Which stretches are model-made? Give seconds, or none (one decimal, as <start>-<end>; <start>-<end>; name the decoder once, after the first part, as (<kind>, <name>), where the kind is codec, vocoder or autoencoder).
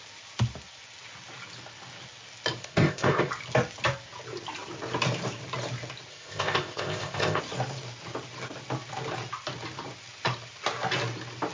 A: 2.6-3.3 (codec, ZipCodec); 6.1-7.4